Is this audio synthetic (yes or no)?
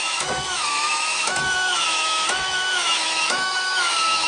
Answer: yes